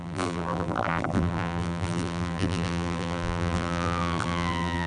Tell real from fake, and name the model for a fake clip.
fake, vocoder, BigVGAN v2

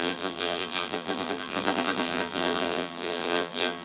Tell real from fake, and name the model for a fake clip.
fake, vocoder, BigVGAN v2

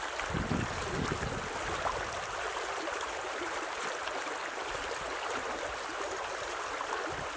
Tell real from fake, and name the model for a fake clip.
real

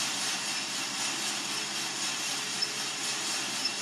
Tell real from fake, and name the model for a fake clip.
real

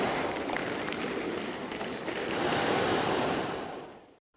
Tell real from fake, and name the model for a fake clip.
fake, vocoder, BigVGAN v2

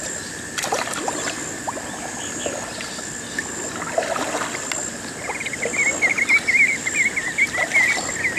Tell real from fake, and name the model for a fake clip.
real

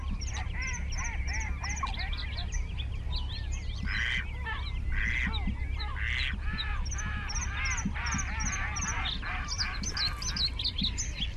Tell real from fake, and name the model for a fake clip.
real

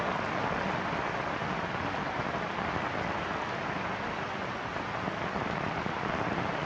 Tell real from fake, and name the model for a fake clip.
real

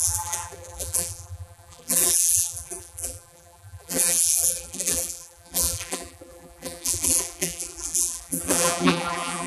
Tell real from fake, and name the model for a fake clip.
fake, vocoder, BigVGAN v2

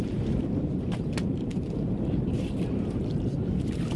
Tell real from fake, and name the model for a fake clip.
fake, vocoder, BigVGAN v2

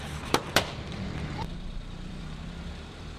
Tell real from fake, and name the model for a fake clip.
fake, vocoder, BigVGAN v2